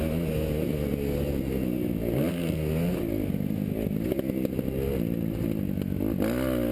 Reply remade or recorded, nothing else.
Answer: recorded